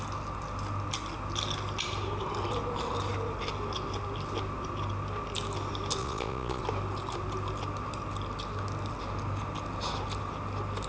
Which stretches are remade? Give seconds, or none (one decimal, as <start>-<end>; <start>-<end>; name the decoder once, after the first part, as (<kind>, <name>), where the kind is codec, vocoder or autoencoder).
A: 6.0-6.6 (vocoder, Vocos)